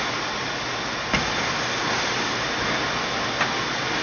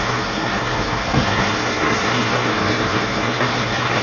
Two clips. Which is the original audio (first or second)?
first